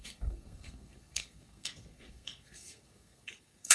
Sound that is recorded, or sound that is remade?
remade